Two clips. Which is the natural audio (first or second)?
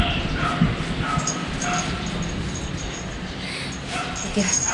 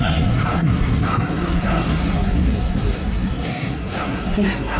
first